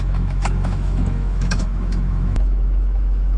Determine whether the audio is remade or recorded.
remade